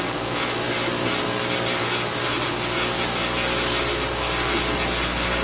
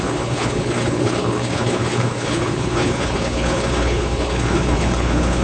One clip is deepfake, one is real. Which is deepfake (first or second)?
second